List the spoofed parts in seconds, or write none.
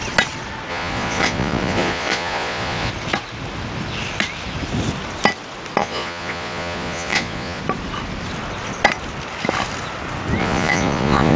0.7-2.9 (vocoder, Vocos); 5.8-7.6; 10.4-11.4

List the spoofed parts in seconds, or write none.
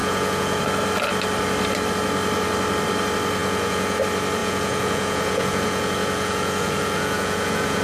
0.0-0.6 (vocoder, Vocos); 3.4-4.0; 4.4-7.8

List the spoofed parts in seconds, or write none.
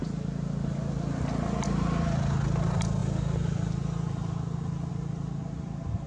none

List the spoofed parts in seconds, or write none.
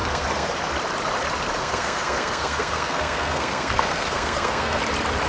0.0-0.5 (codec, SNAC); 1.6-4.8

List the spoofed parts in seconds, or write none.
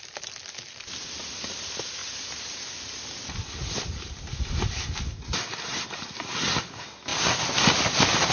none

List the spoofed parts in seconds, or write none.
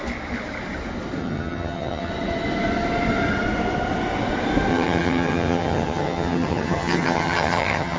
1.2-2.1 (vocoder, HiFi-GAN); 4.7-8.0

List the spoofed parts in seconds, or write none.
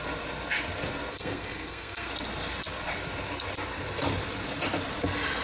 1.1-2.1 (codec, SNAC)